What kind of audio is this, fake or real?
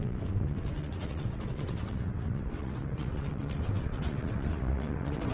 fake